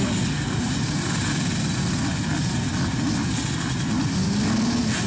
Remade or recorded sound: recorded